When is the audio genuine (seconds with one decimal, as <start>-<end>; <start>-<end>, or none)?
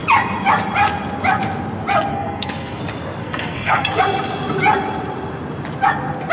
0.0-2.1; 2.8-3.2; 4.0-6.3